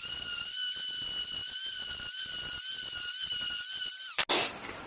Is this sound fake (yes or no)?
no